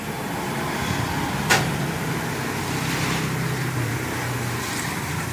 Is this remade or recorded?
remade